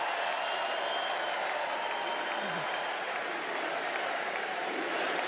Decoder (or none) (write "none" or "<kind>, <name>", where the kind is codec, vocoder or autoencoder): none